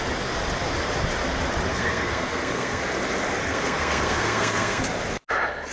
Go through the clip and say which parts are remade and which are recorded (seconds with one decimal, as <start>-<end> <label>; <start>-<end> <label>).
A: 0.0-1.7 recorded; 1.7-2.8 remade; 2.8-3.4 recorded; 3.4-4.8 remade; 4.8-5.7 recorded